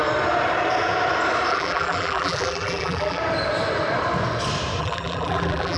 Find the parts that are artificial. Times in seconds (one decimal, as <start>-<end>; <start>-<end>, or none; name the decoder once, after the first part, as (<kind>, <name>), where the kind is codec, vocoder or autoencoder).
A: 1.5-3.2 (vocoder, BigVGAN v2); 4.8-5.8